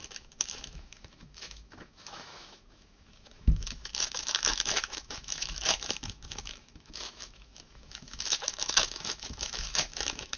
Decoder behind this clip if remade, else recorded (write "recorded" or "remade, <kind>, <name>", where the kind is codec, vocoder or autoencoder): remade, autoencoder, DAC-VAE